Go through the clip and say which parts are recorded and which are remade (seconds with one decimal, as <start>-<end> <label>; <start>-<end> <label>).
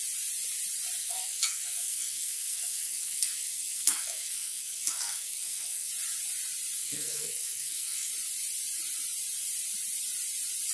0.0-1.0 recorded; 1.0-5.9 remade; 5.9-6.8 recorded; 6.8-8.1 remade; 8.1-10.7 recorded